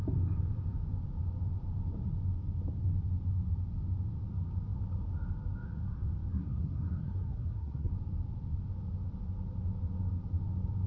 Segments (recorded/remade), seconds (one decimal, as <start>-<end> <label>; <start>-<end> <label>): 0.0-6.4 recorded; 6.4-7.9 remade; 7.9-10.9 recorded